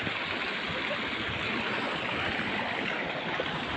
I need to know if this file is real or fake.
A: real